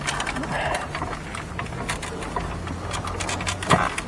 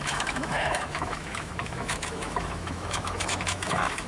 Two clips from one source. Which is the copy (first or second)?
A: second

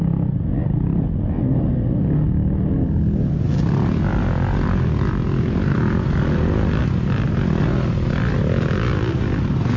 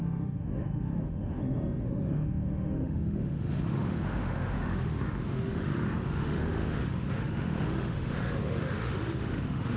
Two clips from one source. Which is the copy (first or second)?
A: second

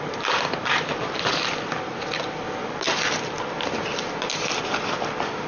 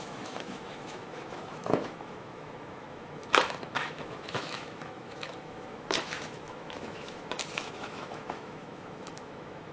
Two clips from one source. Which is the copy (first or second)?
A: second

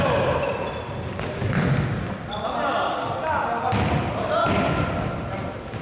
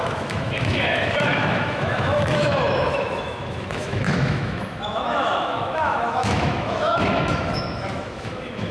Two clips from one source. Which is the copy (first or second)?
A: second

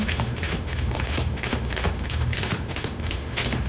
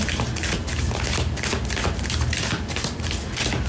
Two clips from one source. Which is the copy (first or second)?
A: first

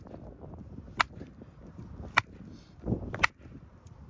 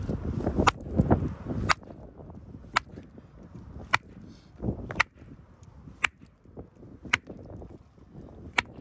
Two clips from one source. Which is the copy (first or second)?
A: first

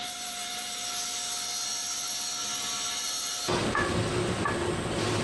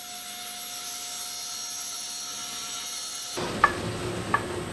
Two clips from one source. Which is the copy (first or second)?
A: first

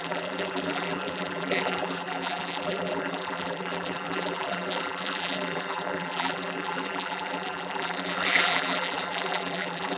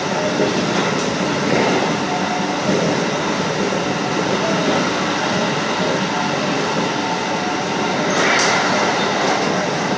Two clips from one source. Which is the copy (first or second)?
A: first